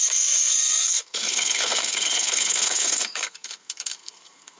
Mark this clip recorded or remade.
remade